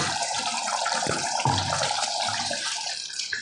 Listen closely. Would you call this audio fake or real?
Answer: fake